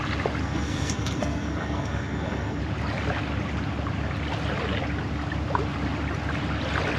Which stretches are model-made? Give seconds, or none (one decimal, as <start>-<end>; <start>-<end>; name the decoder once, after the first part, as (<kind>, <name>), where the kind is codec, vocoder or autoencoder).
0.4-2.6 (codec, SNAC)